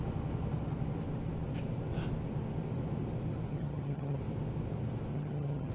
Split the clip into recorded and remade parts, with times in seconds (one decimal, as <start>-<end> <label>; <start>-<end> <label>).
0.0-3.5 recorded; 3.5-4.2 remade; 4.2-5.1 recorded; 5.1-5.7 remade